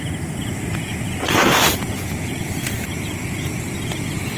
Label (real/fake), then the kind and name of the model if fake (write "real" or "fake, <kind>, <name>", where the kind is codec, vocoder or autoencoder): real